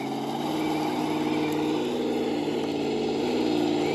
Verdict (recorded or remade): recorded